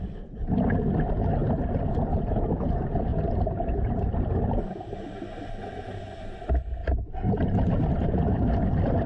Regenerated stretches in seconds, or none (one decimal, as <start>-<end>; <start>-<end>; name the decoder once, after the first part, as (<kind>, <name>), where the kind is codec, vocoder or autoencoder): 1.4-1.9 (vocoder, BigVGAN v2); 3.1-5.4